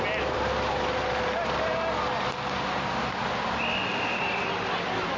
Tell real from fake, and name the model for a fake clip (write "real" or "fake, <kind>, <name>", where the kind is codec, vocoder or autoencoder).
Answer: fake, vocoder, BigVGAN v2